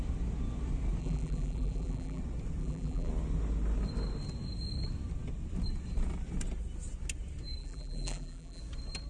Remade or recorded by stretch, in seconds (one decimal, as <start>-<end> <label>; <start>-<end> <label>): 0.0-1.0 recorded; 1.0-2.2 remade; 2.2-2.6 recorded; 2.6-3.1 remade; 3.1-7.6 recorded; 7.6-8.6 remade; 8.6-9.1 recorded